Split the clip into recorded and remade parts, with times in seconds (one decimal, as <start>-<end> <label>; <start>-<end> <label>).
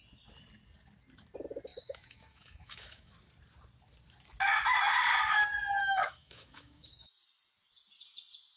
0.0-1.7 recorded; 1.7-3.1 remade; 3.1-5.8 recorded; 5.8-7.1 remade; 7.1-8.6 recorded